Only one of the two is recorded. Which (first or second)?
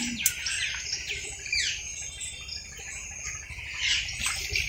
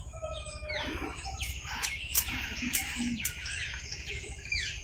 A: first